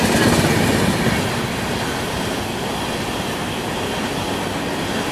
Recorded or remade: recorded